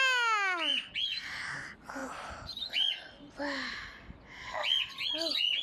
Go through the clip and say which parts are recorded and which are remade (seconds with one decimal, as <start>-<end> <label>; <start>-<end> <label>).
0.0-0.7 recorded; 0.7-1.3 remade; 1.3-2.0 recorded; 2.0-3.3 remade; 3.3-5.6 recorded